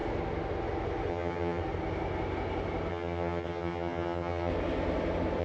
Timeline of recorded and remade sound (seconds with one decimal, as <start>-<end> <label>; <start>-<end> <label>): 0.0-1.1 recorded; 1.1-1.6 remade; 1.6-2.9 recorded; 2.9-4.5 remade; 4.5-5.4 recorded